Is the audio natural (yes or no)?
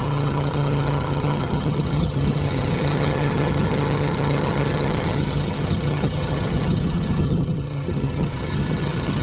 no